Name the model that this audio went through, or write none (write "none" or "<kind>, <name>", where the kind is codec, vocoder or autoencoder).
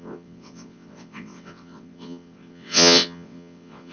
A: vocoder, WaveNeXt